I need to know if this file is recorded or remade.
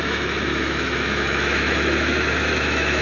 remade